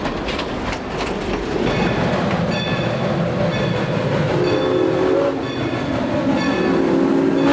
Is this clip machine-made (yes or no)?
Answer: no